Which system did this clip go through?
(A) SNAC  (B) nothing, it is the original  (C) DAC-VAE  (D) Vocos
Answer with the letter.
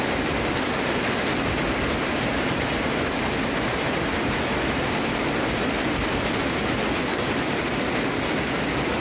B